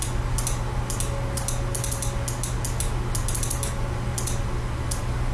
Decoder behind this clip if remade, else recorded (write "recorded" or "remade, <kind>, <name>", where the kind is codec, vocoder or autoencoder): recorded